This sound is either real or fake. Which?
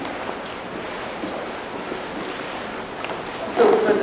real